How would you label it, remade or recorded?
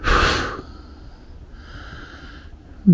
recorded